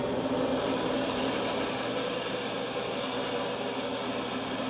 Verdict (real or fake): real